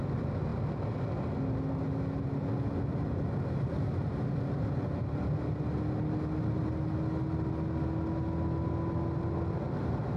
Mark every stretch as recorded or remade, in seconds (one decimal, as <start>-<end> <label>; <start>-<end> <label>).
0.0-10.2 recorded